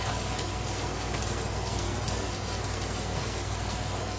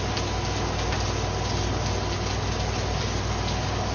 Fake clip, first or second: first